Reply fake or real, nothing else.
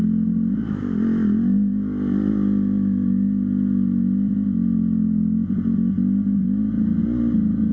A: real